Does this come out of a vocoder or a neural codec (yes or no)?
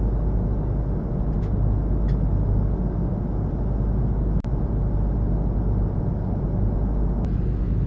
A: no